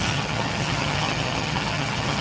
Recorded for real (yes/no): no